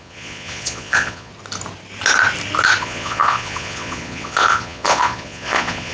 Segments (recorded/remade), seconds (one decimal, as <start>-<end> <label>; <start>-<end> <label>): 0.0-1.3 remade; 1.3-2.8 recorded; 2.8-5.9 remade